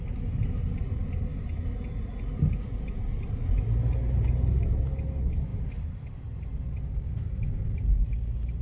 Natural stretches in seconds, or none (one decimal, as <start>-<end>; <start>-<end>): 0.0-8.6